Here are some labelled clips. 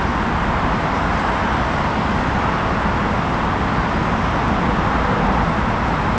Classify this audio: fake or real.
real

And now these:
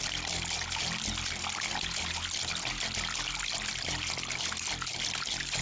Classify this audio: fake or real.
real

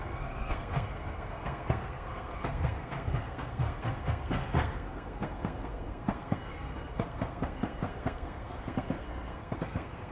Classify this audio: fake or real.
fake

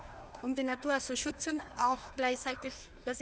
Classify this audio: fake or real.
fake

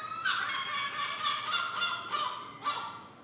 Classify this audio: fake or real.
real